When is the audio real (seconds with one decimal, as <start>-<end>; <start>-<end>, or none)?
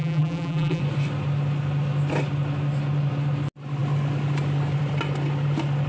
0.8-5.9